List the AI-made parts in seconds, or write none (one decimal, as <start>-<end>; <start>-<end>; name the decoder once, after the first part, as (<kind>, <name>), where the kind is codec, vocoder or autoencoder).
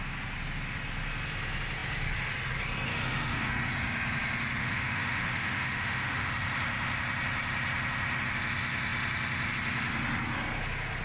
2.9-3.5 (autoencoder, DAC-VAE); 4.6-6.3